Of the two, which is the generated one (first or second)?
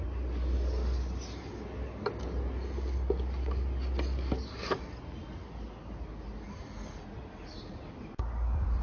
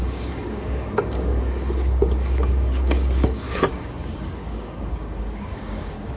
second